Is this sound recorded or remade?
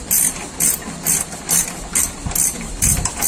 recorded